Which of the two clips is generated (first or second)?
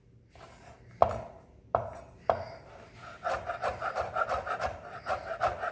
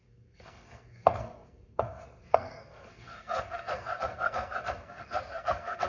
second